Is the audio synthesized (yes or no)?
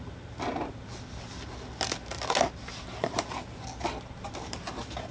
no